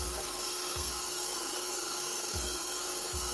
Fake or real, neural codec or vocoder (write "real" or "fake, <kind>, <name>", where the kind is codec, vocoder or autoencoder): fake, codec, SNAC